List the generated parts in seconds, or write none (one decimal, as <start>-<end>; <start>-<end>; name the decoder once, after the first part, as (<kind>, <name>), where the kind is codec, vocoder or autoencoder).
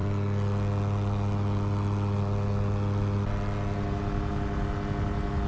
none